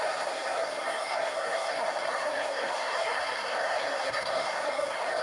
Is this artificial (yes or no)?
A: yes